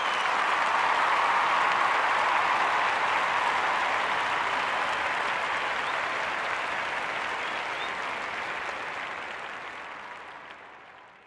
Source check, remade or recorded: recorded